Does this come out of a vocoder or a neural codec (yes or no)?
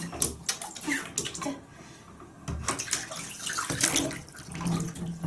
no